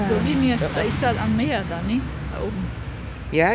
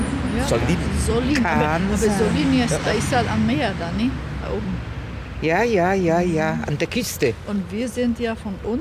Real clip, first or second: second